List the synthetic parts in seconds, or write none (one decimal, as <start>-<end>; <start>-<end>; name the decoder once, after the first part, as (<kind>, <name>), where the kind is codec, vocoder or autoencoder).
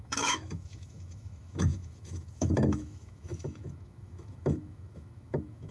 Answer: 0.0-5.7 (autoencoder, DAC-VAE)